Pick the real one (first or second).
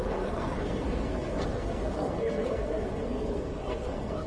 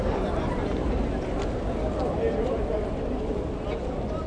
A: second